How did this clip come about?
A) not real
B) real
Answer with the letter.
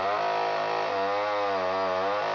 B